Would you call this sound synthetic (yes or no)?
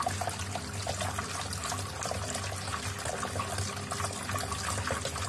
no